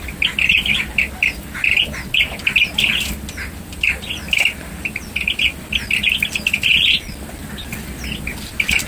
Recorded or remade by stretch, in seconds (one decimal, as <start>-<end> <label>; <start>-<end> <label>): 0.0-8.9 recorded